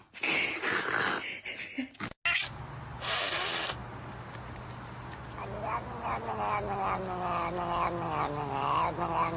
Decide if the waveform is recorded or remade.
recorded